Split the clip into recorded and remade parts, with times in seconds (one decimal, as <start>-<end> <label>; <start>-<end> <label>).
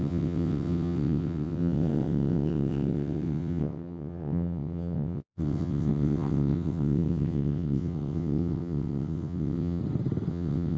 0.0-9.8 remade; 9.8-10.3 recorded; 10.3-10.8 remade